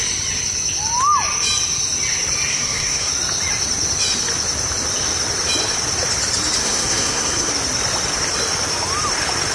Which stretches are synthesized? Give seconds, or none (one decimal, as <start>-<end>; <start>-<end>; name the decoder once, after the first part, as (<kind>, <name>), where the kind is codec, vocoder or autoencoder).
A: 2.5-3.1 (codec, SNAC); 6.6-7.5